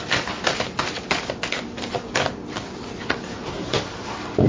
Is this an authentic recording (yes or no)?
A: yes